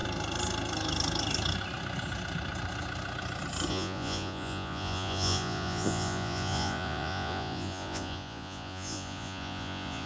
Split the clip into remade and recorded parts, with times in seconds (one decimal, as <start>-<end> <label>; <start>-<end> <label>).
0.0-3.7 recorded; 3.7-10.1 remade